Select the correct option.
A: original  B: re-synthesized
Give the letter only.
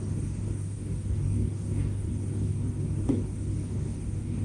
B